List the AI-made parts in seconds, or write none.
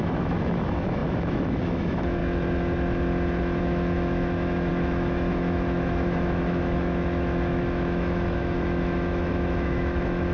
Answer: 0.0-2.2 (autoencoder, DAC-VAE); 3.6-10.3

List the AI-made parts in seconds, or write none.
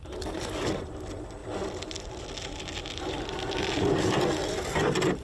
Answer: none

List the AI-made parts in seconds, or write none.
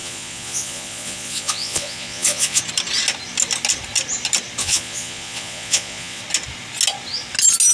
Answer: 0.0-2.6 (vocoder, Vocos); 4.6-6.2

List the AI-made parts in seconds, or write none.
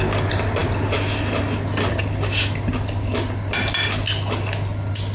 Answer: none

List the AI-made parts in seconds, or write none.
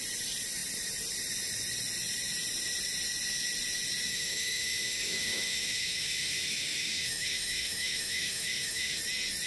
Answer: 4.1-9.0 (autoencoder, DAC-VAE)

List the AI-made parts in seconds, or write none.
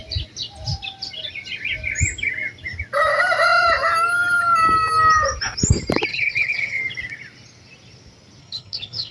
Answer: 6.1-6.8 (codec, HILCodec); 8.4-9.1